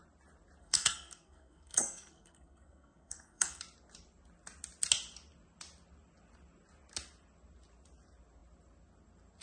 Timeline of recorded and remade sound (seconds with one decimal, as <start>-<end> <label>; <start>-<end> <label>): 0.0-0.6 recorded; 0.6-3.6 remade; 3.6-9.4 recorded